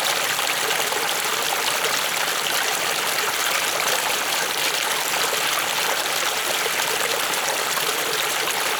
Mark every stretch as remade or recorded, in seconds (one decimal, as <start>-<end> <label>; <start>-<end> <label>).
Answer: 0.0-8.8 recorded